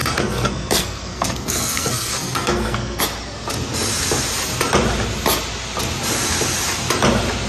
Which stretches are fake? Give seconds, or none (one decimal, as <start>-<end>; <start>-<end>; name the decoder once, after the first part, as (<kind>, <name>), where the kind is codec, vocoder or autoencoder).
0.0-3.0 (codec, SNAC)